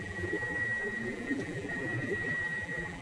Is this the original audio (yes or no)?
no